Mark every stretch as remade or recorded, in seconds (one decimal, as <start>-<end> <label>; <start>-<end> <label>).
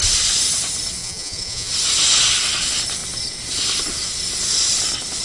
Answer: 0.0-1.0 recorded; 1.0-1.7 remade; 1.7-5.2 recorded